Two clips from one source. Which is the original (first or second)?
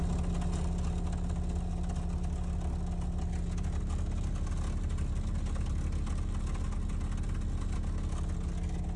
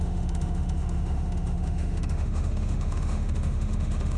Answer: first